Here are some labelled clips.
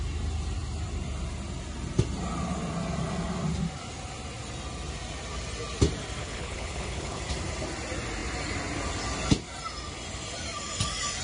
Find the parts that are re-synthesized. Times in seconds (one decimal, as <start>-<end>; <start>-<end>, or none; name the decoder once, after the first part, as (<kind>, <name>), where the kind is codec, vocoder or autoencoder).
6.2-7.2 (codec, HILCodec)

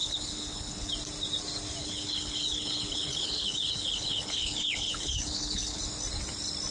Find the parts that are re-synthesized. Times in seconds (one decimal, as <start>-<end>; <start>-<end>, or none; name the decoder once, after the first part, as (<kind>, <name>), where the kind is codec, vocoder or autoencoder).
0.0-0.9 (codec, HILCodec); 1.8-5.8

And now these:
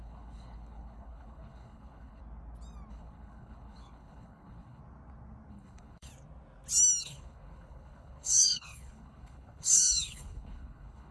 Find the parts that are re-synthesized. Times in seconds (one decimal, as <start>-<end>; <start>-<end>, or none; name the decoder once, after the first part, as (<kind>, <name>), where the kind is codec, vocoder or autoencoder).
0.0-2.2 (codec, HILCodec); 2.9-4.8; 5.5-6.1; 7.0-11.1

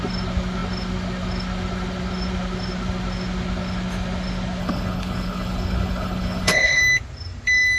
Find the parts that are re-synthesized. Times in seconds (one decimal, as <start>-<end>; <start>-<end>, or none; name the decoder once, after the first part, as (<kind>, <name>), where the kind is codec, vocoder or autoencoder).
4.6-6.8 (codec, HILCodec)

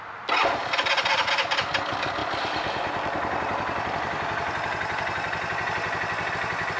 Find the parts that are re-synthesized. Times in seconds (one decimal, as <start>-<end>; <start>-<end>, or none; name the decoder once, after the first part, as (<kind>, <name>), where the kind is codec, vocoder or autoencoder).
none

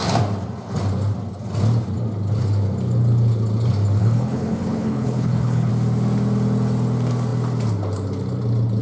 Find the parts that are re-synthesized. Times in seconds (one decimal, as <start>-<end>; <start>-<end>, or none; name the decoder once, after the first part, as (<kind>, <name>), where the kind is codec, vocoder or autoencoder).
4.0-5.7 (codec, HILCodec)

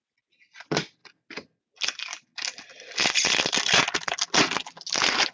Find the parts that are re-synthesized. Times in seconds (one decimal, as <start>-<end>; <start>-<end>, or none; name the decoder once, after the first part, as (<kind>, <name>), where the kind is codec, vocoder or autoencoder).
none